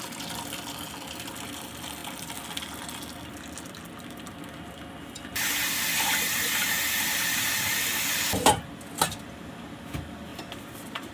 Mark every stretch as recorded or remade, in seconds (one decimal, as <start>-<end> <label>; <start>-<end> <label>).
0.0-10.3 recorded; 10.3-11.1 remade